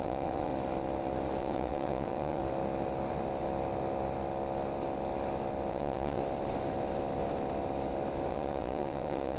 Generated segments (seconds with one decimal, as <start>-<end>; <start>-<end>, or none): 0.0-0.5; 1.4-2.4; 5.7-6.2; 8.3-9.4